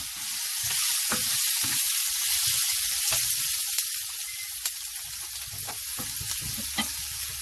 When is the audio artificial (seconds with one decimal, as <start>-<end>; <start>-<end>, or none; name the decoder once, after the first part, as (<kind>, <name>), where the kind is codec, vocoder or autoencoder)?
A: none

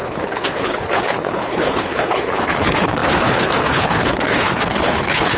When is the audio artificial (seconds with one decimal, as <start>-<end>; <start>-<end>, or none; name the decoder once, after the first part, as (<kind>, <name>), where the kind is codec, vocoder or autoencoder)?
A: 0.0-5.4 (codec, HILCodec)

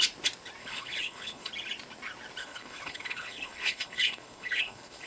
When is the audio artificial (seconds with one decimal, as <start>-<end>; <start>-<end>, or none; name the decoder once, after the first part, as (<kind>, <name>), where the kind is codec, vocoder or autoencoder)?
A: 0.6-1.5 (codec, HILCodec); 2.4-5.1